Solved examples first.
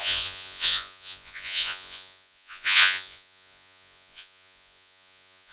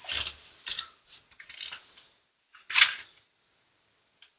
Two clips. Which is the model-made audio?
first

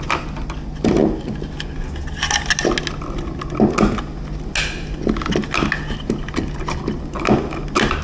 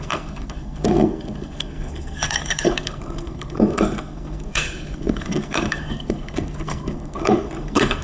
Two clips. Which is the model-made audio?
second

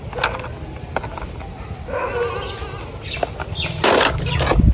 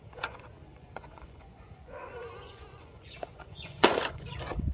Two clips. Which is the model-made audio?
second